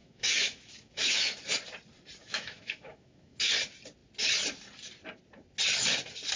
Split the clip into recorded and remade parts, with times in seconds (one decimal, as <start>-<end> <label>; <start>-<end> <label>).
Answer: 0.0-1.4 remade; 1.4-2.2 recorded; 2.2-3.5 remade; 3.5-6.4 recorded